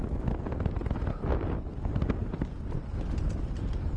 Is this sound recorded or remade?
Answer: recorded